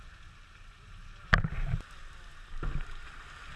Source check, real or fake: real